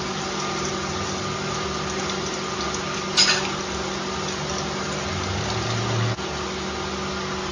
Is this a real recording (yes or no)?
yes